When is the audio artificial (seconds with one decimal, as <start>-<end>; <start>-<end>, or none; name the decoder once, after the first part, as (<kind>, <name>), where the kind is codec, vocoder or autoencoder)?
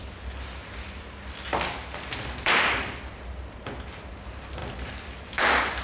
none